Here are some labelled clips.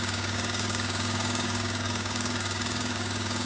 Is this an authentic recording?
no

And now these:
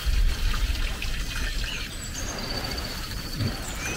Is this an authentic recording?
yes